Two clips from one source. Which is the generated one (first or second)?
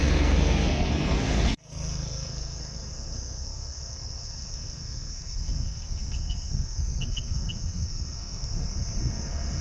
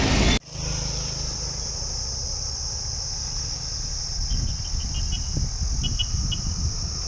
first